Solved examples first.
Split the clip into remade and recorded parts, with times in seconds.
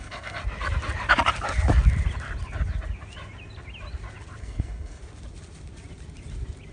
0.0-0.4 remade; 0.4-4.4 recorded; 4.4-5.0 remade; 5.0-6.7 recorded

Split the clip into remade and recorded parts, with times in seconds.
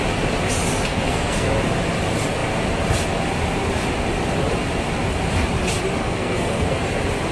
0.0-0.9 recorded; 0.9-1.5 remade; 1.5-6.0 recorded; 6.0-6.8 remade; 6.8-7.3 recorded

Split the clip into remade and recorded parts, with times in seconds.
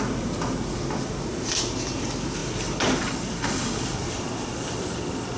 0.0-5.4 recorded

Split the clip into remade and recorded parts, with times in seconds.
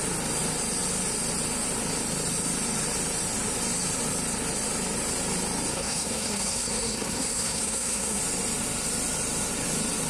0.0-5.7 recorded; 5.7-8.2 remade; 8.2-10.1 recorded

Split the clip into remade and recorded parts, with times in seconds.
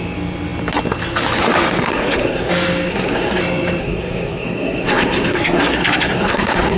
0.0-1.8 recorded; 1.8-2.5 remade; 2.5-2.9 recorded; 2.9-3.4 remade; 3.4-3.8 recorded; 3.8-6.8 remade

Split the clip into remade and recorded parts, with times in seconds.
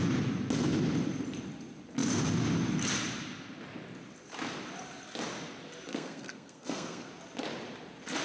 0.0-5.9 recorded; 5.9-7.1 remade; 7.1-8.2 recorded